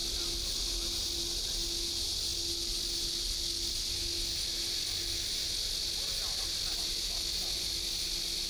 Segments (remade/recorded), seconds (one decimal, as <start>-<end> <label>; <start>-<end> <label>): 0.0-8.5 recorded